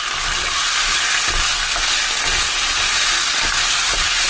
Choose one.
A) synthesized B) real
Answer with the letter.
B